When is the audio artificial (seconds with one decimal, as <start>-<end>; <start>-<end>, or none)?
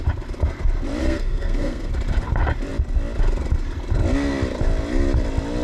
1.0-1.9